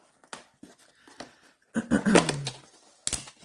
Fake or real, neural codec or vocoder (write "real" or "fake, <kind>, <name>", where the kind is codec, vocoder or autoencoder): real